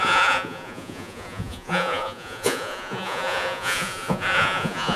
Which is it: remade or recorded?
remade